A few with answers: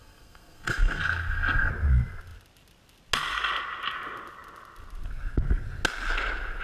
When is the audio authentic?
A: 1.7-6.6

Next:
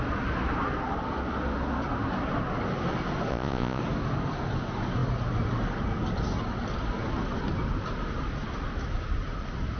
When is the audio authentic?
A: 0.0-3.3; 3.8-9.8

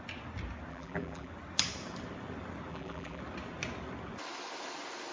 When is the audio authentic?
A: 0.0-0.7; 1.3-2.7; 3.2-5.1

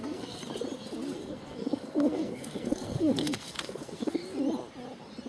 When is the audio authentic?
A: 0.4-1.1; 4.2-5.3

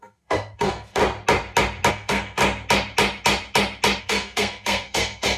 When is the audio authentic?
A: 1.0-1.9; 2.4-4.0

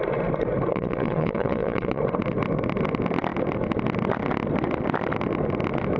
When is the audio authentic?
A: 0.0-0.7; 2.0-6.0

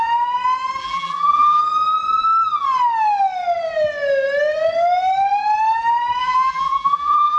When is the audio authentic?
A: 0.0-0.8; 1.6-6.2